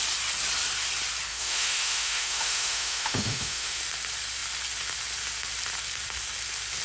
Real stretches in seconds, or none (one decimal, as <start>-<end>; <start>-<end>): 0.0-1.3; 3.8-6.8